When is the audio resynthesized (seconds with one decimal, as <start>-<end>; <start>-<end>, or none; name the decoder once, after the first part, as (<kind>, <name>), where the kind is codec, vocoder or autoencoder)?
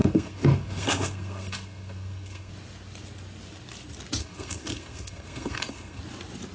0.0-2.5 (codec, SNAC); 4.2-6.0